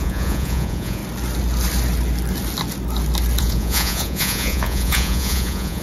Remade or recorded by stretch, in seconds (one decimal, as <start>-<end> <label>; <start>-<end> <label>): 0.0-1.0 remade; 1.0-3.4 recorded; 3.4-5.8 remade